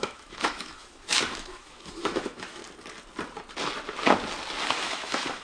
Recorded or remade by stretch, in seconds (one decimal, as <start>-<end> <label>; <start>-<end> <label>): 0.0-2.6 remade; 2.6-4.7 recorded; 4.7-5.4 remade